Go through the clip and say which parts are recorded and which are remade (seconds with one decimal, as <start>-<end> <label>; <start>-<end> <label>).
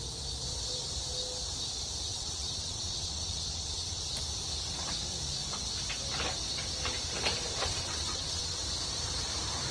0.0-2.1 recorded; 2.1-4.0 remade; 4.0-7.6 recorded; 7.6-8.6 remade; 8.6-9.7 recorded